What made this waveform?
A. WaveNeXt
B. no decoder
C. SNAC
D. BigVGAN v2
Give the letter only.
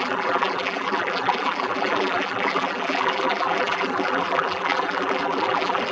D